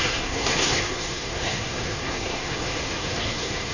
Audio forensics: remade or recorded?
remade